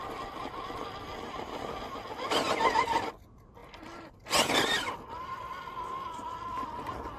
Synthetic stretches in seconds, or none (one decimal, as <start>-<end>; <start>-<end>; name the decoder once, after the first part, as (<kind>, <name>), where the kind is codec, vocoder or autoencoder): none